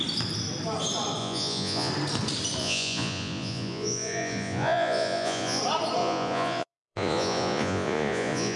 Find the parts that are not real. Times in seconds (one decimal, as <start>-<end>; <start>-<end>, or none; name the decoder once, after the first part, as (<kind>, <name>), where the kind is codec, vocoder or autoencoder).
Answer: 1.2-1.9 (vocoder, Vocos); 2.6-5.6; 6.0-8.6